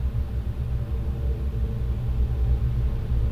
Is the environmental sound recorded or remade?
recorded